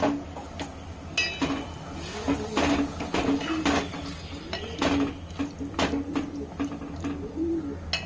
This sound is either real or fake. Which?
real